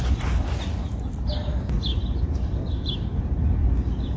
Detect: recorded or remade recorded